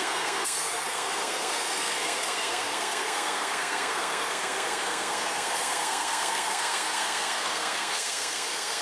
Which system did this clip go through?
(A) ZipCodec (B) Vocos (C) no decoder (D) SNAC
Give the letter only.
D